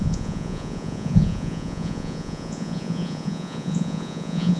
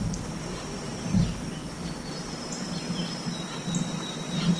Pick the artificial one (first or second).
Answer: first